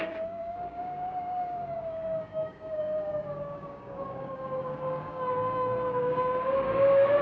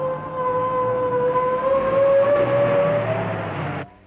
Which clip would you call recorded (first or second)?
second